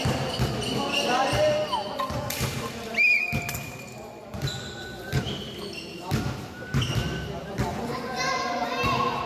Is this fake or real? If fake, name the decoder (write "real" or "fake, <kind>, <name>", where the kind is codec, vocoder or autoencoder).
real